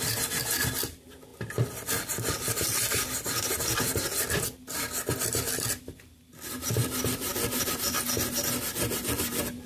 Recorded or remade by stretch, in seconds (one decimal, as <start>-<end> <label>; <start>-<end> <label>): 0.0-9.7 recorded